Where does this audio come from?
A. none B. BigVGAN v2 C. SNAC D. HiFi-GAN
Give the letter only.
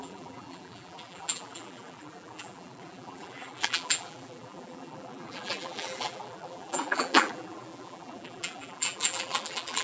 B